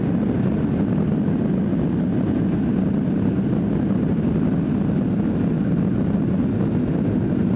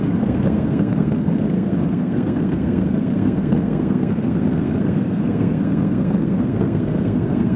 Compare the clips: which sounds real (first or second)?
first